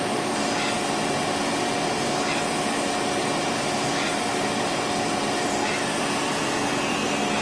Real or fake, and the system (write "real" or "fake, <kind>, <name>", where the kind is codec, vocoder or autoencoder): real